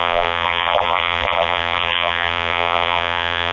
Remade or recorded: remade